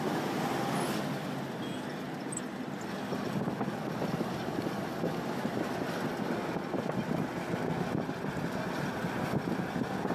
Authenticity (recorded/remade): recorded